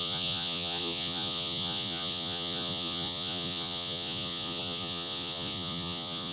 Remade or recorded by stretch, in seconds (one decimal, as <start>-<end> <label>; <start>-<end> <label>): 0.0-6.3 remade